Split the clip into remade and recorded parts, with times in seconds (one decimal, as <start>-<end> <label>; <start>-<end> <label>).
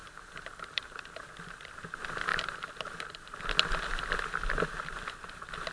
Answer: 0.0-1.3 remade; 1.3-5.7 recorded